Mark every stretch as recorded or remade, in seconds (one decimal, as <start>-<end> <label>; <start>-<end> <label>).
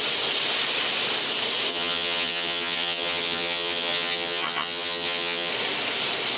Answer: 0.0-1.7 recorded; 1.7-5.5 remade; 5.5-6.4 recorded